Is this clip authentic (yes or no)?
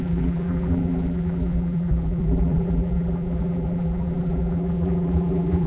no